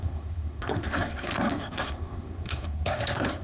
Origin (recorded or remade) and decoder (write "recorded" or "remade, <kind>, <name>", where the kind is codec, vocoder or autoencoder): remade, codec, SNAC